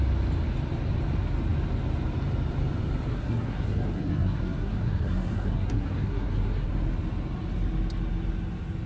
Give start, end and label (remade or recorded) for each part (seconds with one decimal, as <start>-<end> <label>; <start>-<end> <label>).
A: 0.0-3.1 recorded; 3.1-6.7 remade; 6.7-8.9 recorded

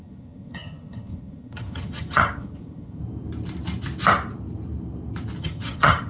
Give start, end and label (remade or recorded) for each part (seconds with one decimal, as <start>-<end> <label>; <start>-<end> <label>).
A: 0.0-3.0 remade; 3.0-5.4 recorded; 5.4-6.1 remade